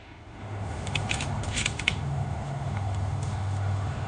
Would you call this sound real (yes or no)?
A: no